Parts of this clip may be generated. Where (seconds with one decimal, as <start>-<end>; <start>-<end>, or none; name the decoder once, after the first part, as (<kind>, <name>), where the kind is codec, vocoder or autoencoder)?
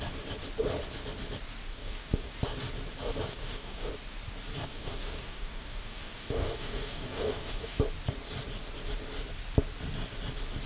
1.7-2.3 (codec, DAC); 3.3-3.9; 4.7-7.8